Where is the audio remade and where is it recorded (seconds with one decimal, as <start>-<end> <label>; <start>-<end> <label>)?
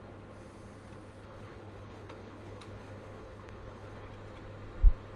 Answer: 0.0-1.0 recorded; 1.0-4.1 remade; 4.1-5.2 recorded